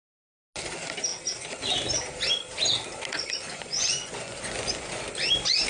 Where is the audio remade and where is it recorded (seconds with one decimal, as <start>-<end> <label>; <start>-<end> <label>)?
0.0-3.5 recorded; 3.5-5.0 remade; 5.0-5.7 recorded